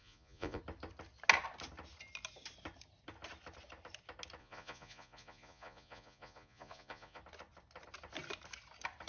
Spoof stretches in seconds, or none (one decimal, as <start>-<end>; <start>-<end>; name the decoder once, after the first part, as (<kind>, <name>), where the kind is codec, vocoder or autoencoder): 0.0-0.6 (vocoder, Vocos); 4.4-7.2